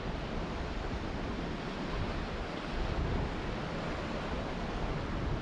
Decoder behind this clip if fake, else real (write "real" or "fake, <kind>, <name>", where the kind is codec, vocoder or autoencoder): real